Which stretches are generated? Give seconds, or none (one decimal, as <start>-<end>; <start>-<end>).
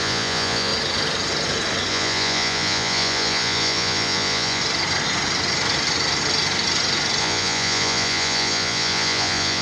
0.0-0.7; 1.9-4.6; 7.2-9.6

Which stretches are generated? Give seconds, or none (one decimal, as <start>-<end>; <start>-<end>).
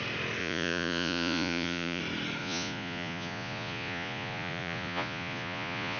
0.4-2.0; 2.4-6.0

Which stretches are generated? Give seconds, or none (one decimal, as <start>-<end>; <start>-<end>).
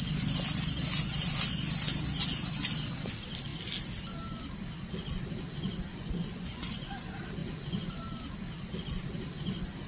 5.9-6.9; 7.4-8.0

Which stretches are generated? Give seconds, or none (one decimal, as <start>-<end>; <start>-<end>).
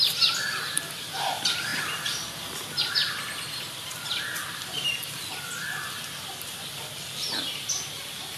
none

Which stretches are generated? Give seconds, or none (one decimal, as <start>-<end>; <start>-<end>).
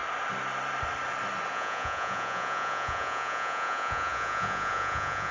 1.5-5.3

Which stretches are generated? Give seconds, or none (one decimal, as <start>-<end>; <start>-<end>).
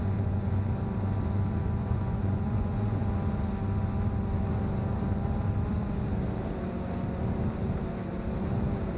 0.0-0.5; 1.8-3.0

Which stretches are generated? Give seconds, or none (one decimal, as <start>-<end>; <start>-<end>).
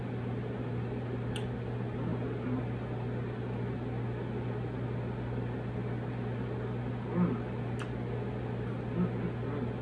none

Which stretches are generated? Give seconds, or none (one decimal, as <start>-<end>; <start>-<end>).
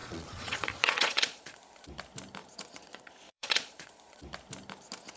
0.0-1.6; 2.4-4.2